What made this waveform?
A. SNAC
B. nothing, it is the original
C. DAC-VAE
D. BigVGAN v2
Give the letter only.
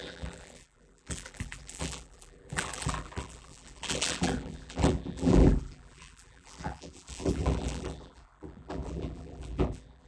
D